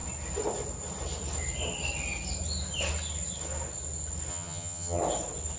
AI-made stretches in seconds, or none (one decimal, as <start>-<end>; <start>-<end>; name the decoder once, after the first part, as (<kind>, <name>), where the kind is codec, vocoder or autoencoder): 4.3-5.0 (vocoder, HiFi-GAN)